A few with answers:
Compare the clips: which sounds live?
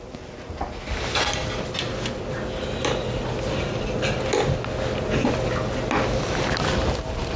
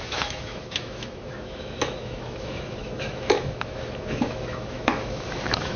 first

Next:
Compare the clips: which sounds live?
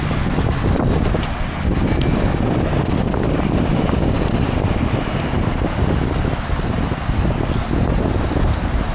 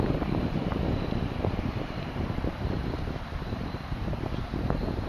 first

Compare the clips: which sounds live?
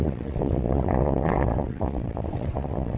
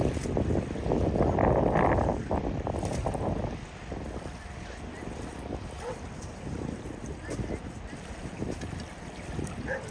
second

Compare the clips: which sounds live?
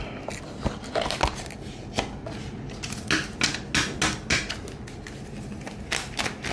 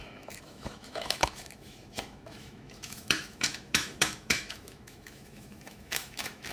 first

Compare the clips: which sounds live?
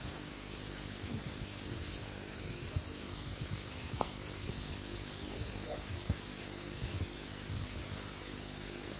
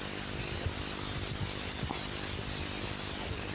second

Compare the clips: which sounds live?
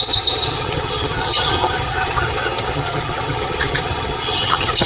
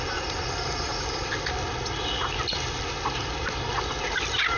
second